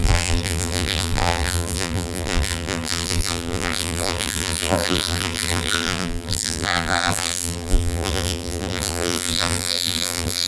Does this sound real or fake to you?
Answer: fake